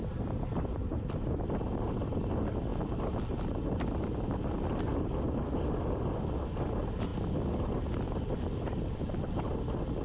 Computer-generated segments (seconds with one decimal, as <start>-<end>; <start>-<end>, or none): none